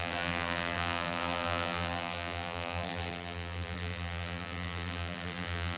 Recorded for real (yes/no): no